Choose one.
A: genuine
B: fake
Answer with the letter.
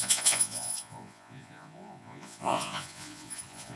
B